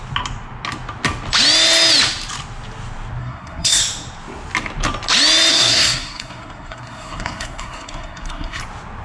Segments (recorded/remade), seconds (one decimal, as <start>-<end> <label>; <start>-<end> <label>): 0.0-3.2 recorded; 3.2-3.8 remade; 3.8-5.5 recorded; 5.5-8.6 remade; 8.6-9.0 recorded